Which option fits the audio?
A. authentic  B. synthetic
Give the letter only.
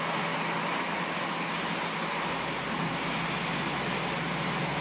A